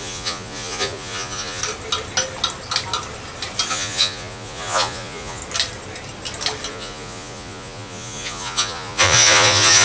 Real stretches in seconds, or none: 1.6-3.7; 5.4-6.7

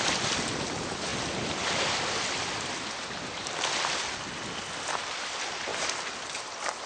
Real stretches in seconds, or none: 0.0-6.9